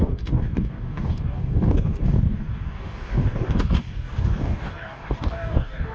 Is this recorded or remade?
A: remade